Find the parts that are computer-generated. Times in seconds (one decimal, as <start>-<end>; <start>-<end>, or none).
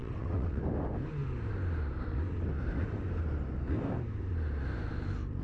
0.0-0.6